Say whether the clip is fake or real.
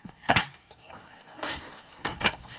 fake